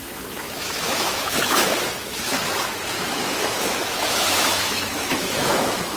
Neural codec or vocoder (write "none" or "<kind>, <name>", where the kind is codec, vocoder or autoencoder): autoencoder, DAC-VAE